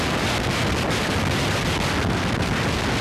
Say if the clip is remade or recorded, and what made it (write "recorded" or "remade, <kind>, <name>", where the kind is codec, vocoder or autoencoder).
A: recorded